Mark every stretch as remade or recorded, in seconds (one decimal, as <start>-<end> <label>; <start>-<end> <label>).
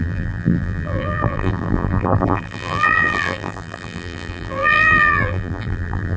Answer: 0.0-6.2 remade